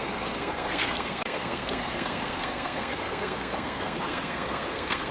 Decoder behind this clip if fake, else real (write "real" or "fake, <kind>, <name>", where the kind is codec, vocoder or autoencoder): fake, codec, SNAC